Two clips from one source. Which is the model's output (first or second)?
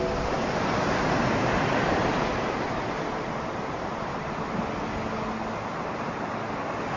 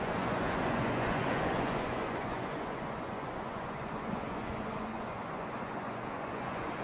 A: second